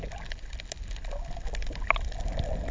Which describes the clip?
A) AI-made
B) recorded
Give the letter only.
B